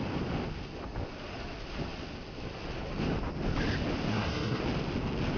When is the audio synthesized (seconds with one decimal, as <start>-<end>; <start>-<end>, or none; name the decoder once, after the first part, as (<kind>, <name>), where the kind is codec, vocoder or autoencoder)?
4.1-4.6 (codec, SNAC)